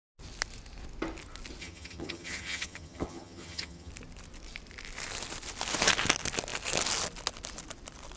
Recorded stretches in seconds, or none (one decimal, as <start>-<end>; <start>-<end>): 0.0-1.6; 3.9-8.2